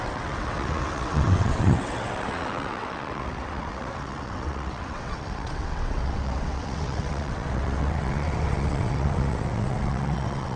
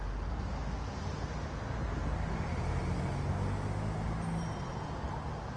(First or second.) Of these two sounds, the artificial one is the first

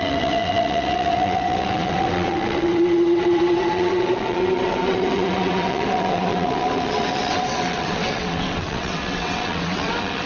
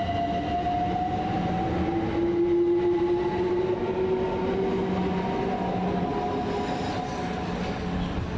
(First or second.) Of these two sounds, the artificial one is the first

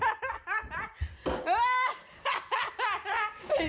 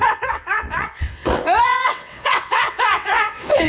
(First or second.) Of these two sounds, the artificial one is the second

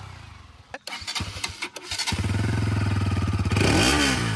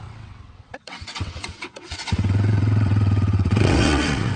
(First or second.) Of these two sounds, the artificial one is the second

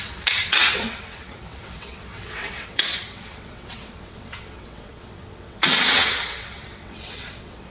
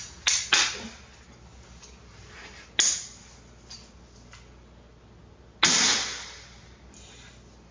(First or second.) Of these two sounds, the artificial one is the first